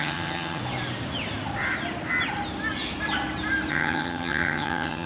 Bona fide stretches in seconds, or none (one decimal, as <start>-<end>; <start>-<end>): 0.6-3.7